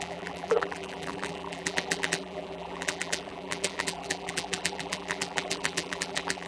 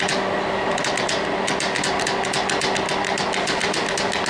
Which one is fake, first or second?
first